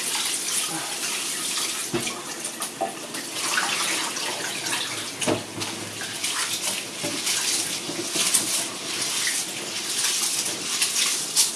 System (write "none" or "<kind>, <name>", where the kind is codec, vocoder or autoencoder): none